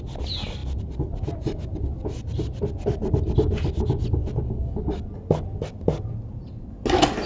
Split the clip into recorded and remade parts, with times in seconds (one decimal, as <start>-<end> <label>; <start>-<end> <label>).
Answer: 0.0-7.3 recorded